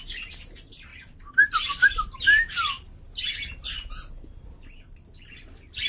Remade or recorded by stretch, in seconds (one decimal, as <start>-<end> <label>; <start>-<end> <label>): 0.0-0.9 recorded; 0.9-3.3 remade; 3.3-5.9 recorded